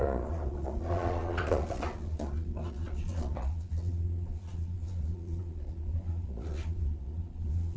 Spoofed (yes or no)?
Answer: yes